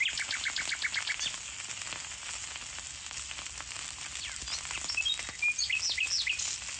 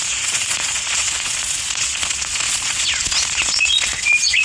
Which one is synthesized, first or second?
second